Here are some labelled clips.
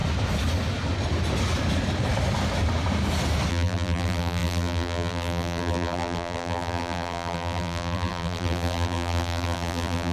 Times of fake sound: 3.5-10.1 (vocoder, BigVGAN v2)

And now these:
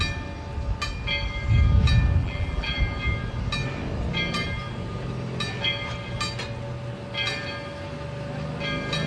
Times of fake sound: 2.2-2.8 (vocoder, BigVGAN v2)